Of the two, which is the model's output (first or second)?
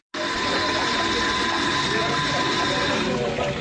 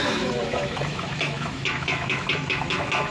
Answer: second